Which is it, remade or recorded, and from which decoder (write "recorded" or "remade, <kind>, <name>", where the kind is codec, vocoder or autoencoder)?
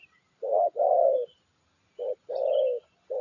recorded